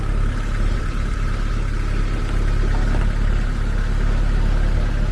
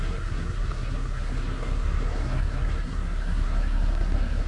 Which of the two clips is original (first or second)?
first